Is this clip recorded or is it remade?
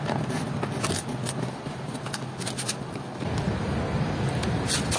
recorded